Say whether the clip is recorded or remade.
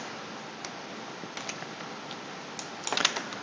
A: recorded